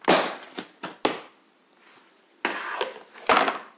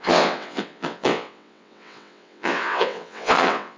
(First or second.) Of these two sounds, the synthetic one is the second